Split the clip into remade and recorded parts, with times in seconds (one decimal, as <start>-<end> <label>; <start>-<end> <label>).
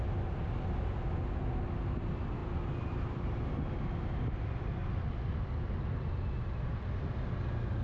0.0-7.8 recorded